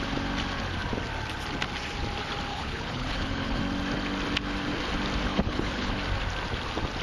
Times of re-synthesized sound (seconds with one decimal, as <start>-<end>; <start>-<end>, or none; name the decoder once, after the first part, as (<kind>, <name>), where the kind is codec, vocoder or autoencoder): 2.5-3.6 (codec, HILCodec); 5.3-5.9